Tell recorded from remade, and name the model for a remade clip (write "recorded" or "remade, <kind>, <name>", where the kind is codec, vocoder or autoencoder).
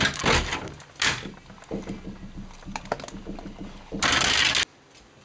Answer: recorded